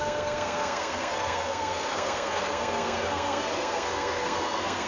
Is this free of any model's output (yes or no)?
no